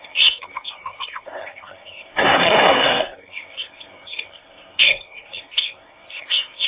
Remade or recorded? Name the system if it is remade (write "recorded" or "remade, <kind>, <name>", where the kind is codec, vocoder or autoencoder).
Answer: remade, codec, SNAC